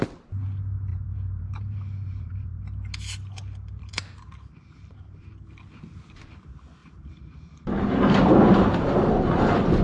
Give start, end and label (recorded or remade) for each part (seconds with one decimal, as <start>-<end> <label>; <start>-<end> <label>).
0.0-0.9 recorded; 0.9-2.6 remade; 2.6-3.8 recorded; 3.8-5.5 remade; 5.5-6.8 recorded; 6.8-9.8 remade